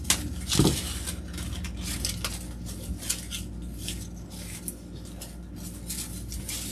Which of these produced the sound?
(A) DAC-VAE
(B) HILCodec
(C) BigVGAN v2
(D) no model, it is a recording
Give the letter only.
D